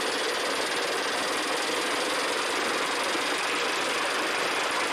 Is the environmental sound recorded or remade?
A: recorded